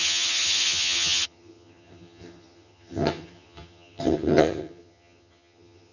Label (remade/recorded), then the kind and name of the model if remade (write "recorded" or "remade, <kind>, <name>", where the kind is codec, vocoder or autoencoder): remade, vocoder, HiFi-GAN